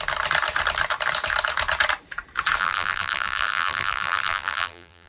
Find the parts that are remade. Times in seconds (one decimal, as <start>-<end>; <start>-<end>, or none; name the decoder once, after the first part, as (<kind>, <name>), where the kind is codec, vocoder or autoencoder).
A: 2.6-5.1 (vocoder, BigVGAN v2)